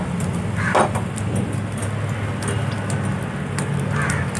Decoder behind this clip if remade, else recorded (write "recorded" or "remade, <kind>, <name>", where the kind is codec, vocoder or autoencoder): recorded